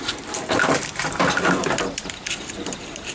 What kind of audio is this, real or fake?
real